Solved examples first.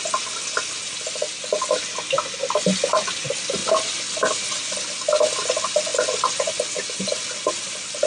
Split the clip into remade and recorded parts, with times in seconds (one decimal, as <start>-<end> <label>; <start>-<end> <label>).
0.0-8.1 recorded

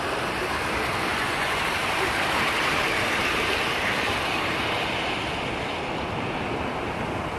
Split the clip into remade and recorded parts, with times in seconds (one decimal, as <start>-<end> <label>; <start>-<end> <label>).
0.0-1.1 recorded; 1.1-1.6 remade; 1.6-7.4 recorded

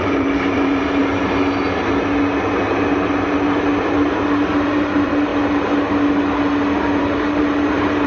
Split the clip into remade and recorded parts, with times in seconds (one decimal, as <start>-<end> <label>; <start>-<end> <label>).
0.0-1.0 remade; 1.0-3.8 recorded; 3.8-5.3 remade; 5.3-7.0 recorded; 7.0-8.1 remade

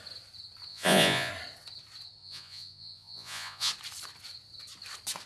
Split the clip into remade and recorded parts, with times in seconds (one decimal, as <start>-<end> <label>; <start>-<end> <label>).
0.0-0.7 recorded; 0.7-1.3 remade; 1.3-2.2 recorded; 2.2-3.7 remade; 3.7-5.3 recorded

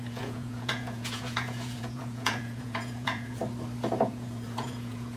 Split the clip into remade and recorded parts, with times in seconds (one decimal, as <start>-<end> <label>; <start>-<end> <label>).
0.0-3.4 remade; 3.4-4.0 recorded; 4.0-5.2 remade

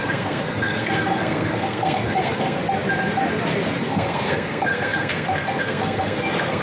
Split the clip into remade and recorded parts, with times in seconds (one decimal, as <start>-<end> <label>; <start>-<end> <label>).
0.0-2.6 remade; 2.6-3.8 recorded; 3.8-6.6 remade

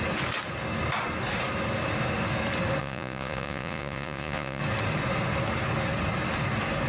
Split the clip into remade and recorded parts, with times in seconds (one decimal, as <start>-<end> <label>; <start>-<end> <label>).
0.0-2.8 recorded; 2.8-4.6 remade; 4.6-6.9 recorded